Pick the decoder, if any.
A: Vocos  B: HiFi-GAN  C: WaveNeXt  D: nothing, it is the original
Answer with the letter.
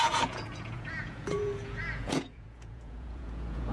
A